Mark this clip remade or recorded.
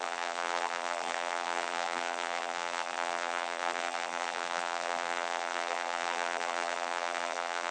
remade